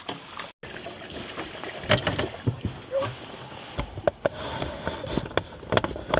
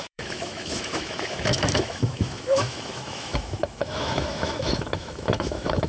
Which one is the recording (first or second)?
first